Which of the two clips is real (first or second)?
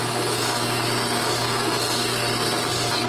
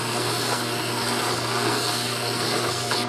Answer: first